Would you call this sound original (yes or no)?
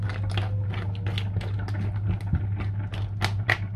yes